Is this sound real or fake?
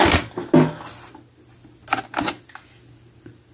real